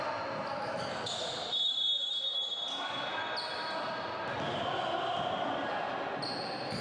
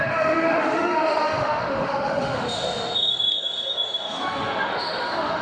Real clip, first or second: first